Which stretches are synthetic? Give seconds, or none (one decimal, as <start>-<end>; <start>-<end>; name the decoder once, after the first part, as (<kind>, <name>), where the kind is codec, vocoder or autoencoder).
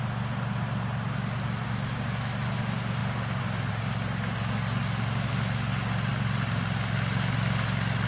none